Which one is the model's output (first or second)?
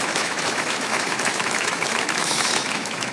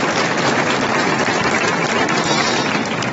first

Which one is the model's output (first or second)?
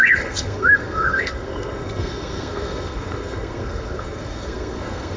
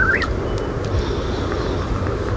first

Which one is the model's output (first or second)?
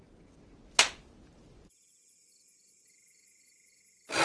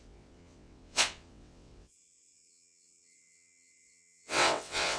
second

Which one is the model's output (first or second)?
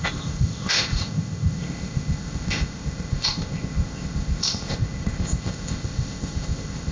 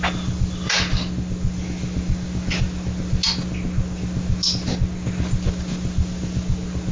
first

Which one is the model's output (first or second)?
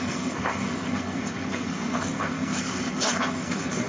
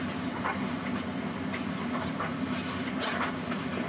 first